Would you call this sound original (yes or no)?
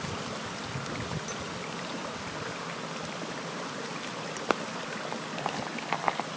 yes